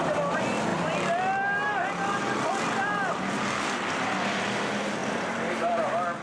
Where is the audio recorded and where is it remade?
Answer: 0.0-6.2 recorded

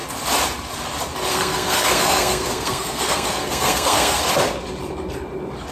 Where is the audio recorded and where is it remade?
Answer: 0.0-1.3 recorded; 1.3-4.3 remade; 4.3-5.7 recorded

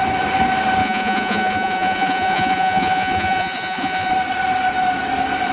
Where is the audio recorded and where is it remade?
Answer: 0.0-0.8 recorded; 0.8-4.1 remade; 4.1-5.5 recorded

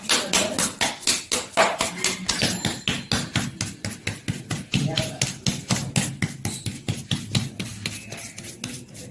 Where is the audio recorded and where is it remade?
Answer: 0.0-9.1 recorded